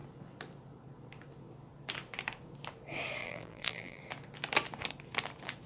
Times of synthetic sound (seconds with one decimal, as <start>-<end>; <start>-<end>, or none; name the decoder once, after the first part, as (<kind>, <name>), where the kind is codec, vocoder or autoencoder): 3.2-4.0 (vocoder, BigVGAN v2)